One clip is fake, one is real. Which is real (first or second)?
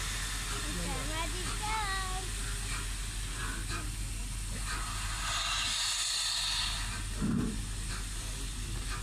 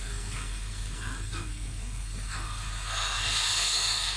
first